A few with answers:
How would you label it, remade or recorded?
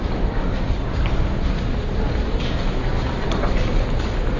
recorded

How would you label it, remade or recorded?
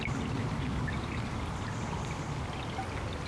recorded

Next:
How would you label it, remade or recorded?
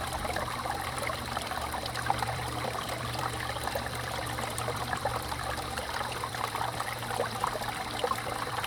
remade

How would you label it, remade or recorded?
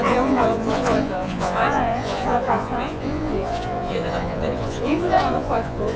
remade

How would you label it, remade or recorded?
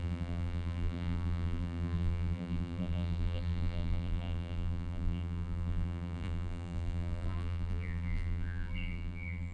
remade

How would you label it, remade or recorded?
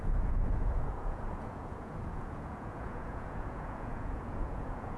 remade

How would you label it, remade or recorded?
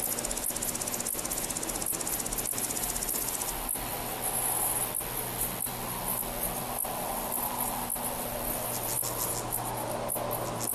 recorded